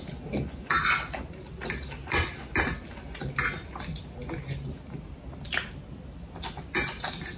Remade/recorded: recorded